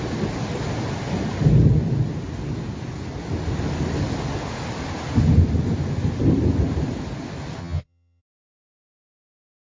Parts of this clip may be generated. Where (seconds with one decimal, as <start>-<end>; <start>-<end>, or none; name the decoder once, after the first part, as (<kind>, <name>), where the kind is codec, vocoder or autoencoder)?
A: 7.6-8.2 (vocoder, HiFi-GAN)